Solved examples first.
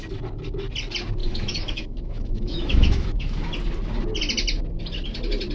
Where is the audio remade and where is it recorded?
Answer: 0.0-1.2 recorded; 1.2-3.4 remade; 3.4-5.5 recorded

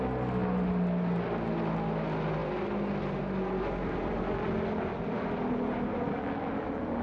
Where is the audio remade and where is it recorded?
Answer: 0.0-7.0 recorded

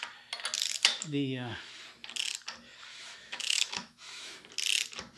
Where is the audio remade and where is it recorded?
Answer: 0.0-0.8 recorded; 0.8-1.8 remade; 1.8-2.9 recorded; 2.9-4.5 remade; 4.5-5.2 recorded

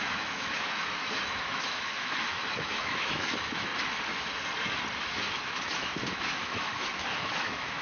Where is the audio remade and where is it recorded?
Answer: 0.0-3.7 remade; 3.7-5.0 recorded; 5.0-7.8 remade

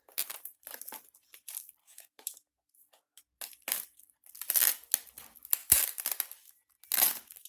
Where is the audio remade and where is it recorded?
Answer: 0.0-1.8 recorded; 1.8-3.2 remade; 3.2-7.5 recorded

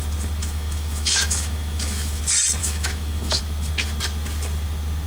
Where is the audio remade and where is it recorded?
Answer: 0.0-0.4 recorded; 0.4-2.2 remade; 2.2-2.6 recorded; 2.6-3.4 remade; 3.4-5.1 recorded